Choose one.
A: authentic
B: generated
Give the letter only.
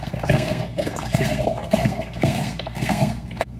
B